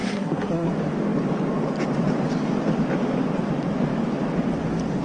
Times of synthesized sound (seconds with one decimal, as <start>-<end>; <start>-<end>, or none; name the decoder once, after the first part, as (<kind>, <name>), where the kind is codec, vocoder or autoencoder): 0.0-0.7 (codec, SNAC)

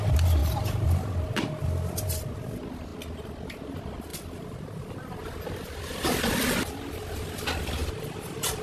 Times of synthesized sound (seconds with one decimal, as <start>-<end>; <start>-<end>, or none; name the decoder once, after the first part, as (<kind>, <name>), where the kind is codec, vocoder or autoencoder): 4.1-7.2 (vocoder, BigVGAN v2); 7.8-8.6

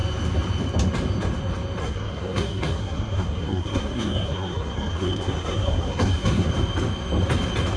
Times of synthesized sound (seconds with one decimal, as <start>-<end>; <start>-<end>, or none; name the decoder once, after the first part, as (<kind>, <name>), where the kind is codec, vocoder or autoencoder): 1.8-6.5 (codec, SNAC)

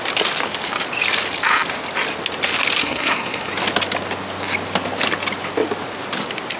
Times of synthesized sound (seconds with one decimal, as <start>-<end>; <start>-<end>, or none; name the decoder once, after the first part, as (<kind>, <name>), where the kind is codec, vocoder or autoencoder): 2.8-3.5 (codec, SNAC)

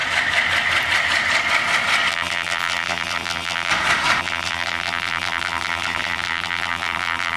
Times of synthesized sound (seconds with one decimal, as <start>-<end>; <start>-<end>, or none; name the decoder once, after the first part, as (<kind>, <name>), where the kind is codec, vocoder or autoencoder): 2.1-3.7 (vocoder, BigVGAN v2); 4.2-7.4

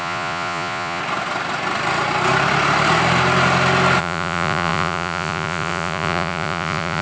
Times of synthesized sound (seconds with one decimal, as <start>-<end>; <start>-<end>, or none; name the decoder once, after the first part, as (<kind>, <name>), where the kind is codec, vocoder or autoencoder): 0.0-1.0 (vocoder, Vocos); 4.0-7.0

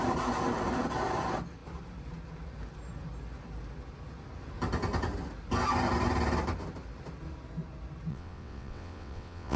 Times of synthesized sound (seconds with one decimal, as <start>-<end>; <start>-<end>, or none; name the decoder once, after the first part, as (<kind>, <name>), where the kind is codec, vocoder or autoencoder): 8.1-9.6 (vocoder, WaveNeXt)

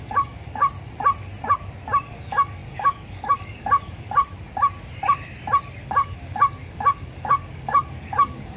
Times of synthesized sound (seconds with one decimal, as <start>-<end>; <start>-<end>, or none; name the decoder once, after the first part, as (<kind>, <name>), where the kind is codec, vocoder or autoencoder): 0.0-0.6 (codec, DAC); 2.0-4.3; 5.8-8.6